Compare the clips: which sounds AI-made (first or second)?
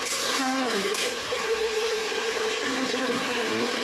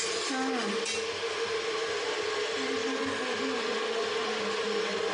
first